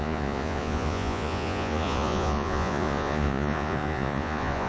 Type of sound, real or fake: fake